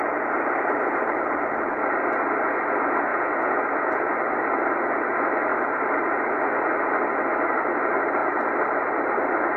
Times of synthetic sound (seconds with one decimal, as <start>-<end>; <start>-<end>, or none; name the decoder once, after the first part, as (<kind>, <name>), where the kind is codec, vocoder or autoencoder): 3.1-3.9 (vocoder, Vocos)